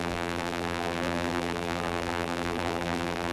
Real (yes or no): no